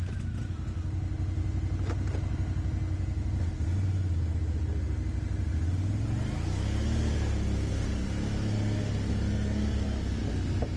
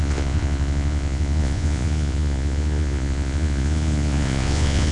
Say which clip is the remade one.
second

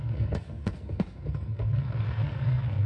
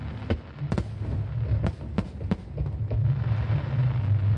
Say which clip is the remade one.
first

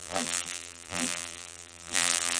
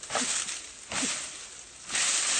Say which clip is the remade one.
first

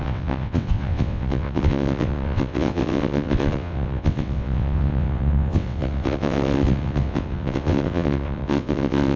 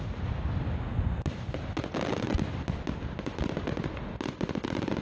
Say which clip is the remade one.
first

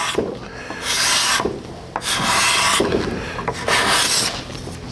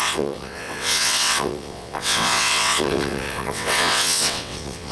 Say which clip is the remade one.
second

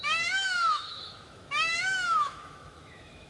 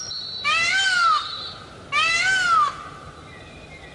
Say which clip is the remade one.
first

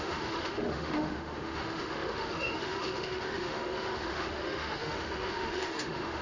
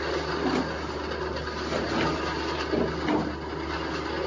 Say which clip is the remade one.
first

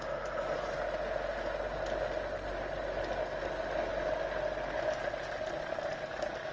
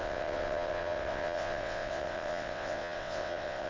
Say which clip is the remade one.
second